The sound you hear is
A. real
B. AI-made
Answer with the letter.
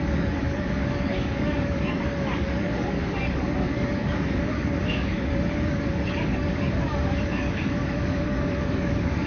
B